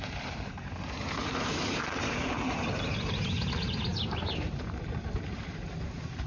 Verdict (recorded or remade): remade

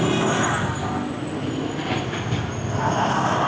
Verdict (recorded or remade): recorded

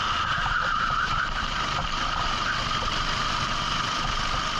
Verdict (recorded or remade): remade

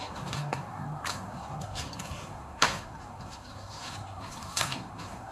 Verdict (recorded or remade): remade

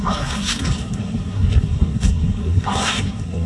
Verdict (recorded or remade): remade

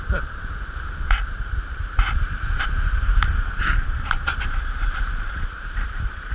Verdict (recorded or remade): remade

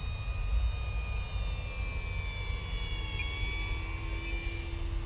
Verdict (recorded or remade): recorded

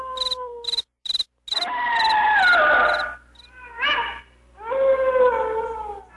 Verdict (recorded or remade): recorded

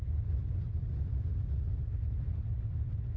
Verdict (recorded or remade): recorded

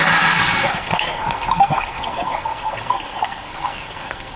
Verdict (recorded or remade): remade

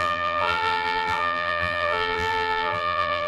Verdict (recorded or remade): remade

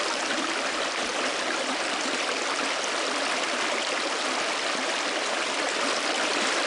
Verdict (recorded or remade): recorded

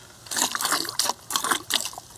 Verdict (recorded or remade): recorded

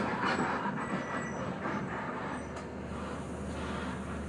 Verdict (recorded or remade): recorded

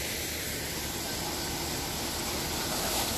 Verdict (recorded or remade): recorded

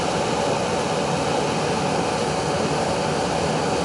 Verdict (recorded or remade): recorded